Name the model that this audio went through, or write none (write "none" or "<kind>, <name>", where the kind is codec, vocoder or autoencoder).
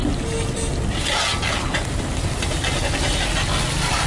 none